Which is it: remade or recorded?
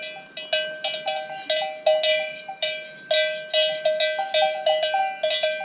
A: recorded